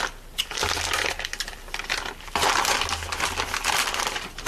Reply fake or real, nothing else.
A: real